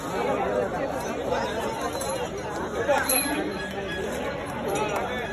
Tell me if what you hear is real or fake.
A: real